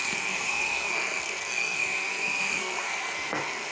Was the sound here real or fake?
fake